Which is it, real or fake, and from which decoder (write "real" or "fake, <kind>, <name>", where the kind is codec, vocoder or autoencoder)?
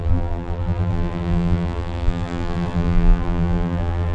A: fake, vocoder, BigVGAN v2